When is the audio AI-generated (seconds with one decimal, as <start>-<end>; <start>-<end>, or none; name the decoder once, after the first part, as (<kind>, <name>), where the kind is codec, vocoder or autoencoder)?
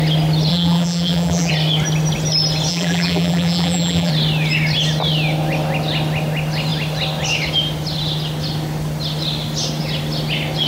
0.5-1.5 (vocoder, BigVGAN v2); 2.7-4.1